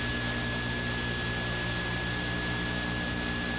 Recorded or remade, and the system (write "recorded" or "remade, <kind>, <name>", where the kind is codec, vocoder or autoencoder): recorded